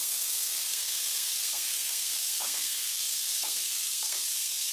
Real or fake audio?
fake